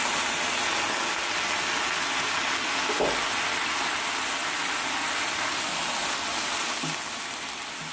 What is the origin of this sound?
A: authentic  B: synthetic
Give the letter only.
A